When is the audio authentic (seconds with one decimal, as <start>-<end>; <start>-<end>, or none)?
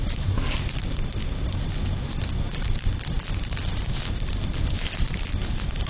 0.0-5.9